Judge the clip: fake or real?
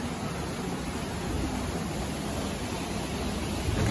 real